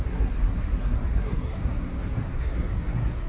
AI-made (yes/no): yes